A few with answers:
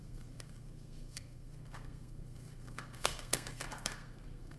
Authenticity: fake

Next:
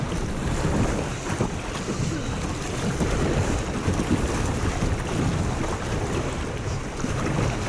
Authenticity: real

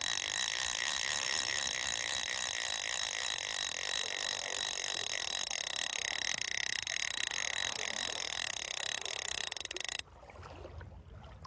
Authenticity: real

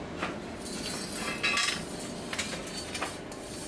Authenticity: real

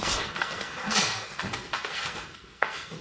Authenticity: fake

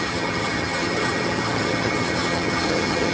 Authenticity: fake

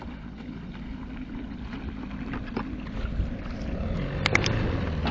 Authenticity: real